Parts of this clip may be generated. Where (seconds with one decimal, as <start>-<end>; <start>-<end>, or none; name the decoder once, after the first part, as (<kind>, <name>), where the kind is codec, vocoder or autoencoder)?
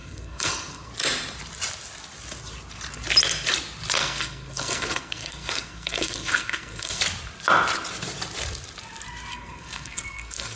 0.0-0.9 (codec, SNAC); 4.0-7.0; 9.3-10.6